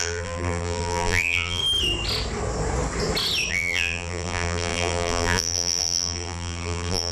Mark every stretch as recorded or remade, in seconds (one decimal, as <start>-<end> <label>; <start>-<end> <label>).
0.0-1.6 remade; 1.6-3.5 recorded; 3.5-7.1 remade